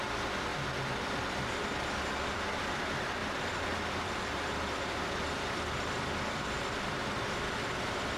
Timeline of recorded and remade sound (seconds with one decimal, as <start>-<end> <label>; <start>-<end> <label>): 0.0-3.2 recorded; 3.2-8.2 remade